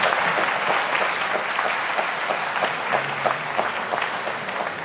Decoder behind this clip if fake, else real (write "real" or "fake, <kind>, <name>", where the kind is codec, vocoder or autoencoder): real